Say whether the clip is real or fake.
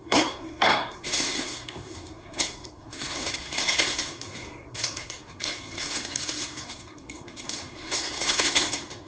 fake